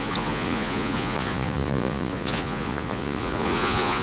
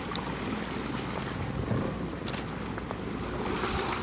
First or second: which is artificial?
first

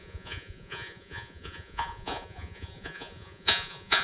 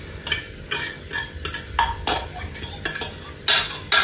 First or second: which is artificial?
first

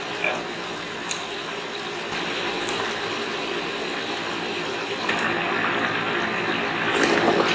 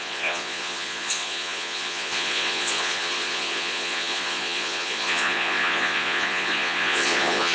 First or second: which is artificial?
second